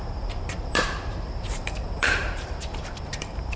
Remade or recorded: remade